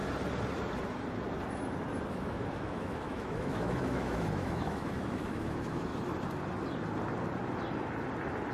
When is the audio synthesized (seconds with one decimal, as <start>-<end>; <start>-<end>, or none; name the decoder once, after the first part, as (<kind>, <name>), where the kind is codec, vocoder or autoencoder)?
2.1-5.9 (autoencoder, DAC-VAE)